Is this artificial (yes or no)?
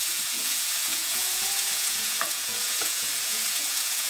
yes